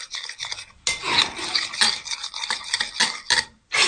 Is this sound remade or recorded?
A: recorded